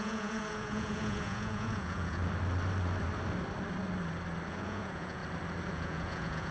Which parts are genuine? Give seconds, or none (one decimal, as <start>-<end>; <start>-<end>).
2.2-4.5; 5.2-5.7